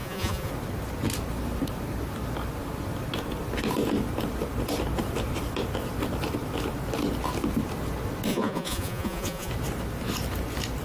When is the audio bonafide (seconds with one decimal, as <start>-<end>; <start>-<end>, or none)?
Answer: 0.5-8.3; 9.5-10.8